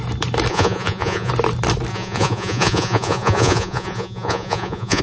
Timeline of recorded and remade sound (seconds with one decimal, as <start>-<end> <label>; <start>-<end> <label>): 0.0-0.5 recorded; 0.5-1.3 remade; 1.3-1.9 recorded; 1.9-5.0 remade